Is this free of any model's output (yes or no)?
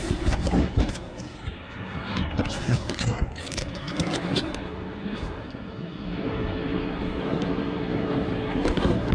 no